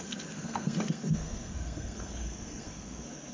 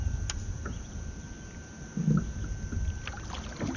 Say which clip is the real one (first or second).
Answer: second